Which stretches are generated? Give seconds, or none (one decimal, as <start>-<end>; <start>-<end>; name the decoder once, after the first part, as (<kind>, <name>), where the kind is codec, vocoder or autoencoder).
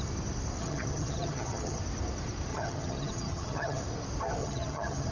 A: 0.6-1.8 (vocoder, HiFi-GAN); 2.5-3.8; 4.4-5.1